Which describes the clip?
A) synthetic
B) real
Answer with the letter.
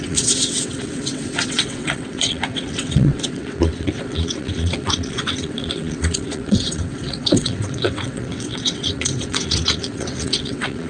A